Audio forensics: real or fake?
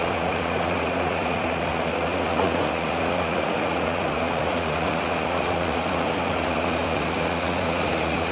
fake